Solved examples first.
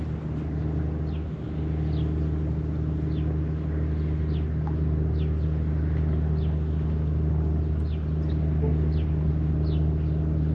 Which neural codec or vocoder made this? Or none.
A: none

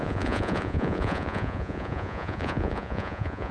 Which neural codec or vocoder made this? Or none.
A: vocoder, Vocos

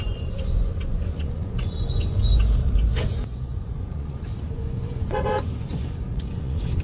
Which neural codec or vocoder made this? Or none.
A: vocoder, Vocos